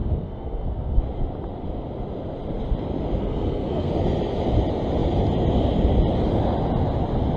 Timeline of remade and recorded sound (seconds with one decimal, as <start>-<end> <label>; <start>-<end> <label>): 0.0-1.0 remade; 1.0-3.2 recorded; 3.2-3.9 remade; 3.9-7.4 recorded